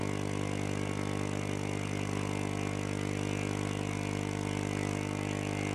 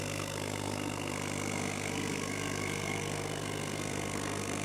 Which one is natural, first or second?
first